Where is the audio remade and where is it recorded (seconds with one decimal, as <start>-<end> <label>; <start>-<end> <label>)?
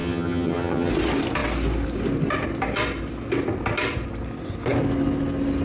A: 0.0-0.9 remade; 0.9-5.6 recorded